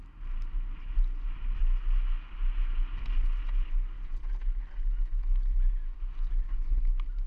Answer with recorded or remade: recorded